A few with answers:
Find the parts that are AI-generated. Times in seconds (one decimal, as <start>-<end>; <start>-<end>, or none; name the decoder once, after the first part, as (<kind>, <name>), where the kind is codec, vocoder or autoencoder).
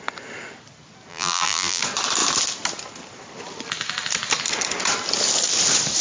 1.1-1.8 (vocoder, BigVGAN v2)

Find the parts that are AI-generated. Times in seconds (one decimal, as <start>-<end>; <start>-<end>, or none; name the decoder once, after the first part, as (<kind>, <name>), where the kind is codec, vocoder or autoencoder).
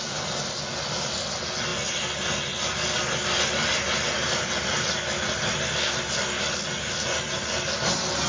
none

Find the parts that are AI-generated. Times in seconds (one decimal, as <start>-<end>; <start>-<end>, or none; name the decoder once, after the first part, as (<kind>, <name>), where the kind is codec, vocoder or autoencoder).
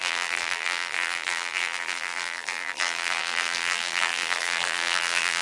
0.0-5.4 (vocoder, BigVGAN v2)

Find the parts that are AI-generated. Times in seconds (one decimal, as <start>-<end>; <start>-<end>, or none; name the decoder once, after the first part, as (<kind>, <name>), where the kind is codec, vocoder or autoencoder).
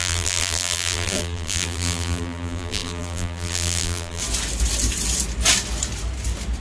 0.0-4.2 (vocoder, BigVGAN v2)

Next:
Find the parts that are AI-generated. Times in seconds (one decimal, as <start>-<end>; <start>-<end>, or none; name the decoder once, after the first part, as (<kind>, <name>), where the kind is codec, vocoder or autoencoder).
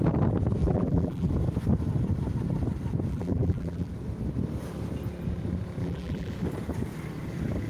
0.6-1.3 (vocoder, BigVGAN v2); 3.1-3.9; 5.8-6.3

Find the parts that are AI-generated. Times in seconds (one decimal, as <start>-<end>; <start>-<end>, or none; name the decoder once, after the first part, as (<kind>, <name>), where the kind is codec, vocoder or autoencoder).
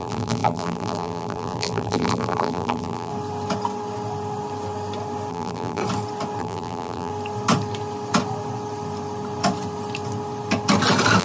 0.0-3.1 (vocoder, BigVGAN v2); 5.3-5.8; 6.4-7.1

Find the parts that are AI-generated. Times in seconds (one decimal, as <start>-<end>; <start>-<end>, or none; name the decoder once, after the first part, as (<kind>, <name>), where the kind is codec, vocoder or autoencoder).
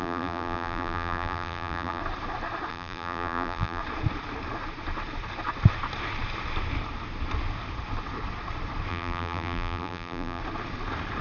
0.0-2.0 (vocoder, BigVGAN v2); 2.7-3.8; 8.9-10.4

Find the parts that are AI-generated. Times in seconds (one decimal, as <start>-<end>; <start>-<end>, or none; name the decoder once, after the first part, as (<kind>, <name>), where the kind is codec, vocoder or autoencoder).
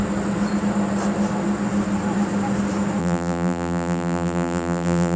3.0-5.2 (vocoder, BigVGAN v2)